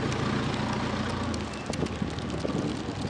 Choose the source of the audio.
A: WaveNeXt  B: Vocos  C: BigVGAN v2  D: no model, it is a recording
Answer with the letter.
D